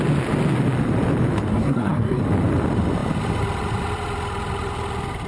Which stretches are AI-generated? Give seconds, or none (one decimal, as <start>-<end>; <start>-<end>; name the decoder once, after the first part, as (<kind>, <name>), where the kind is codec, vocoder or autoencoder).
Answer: 1.5-2.2 (codec, SNAC)